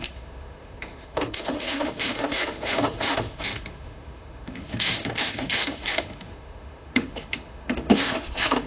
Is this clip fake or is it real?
fake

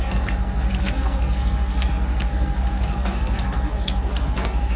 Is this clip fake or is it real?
fake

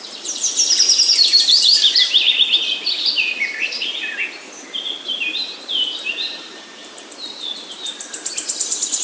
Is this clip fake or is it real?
fake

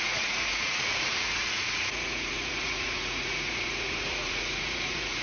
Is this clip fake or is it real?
fake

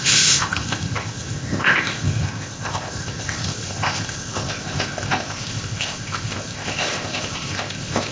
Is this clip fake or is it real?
fake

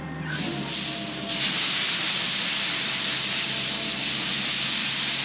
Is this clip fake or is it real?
real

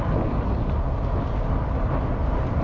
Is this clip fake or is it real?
real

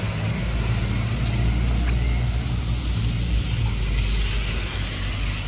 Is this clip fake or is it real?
real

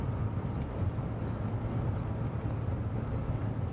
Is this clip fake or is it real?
real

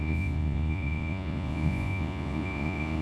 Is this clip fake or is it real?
fake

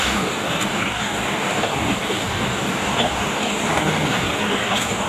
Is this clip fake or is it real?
fake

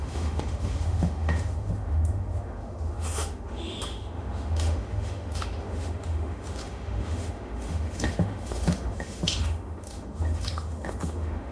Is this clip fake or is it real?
fake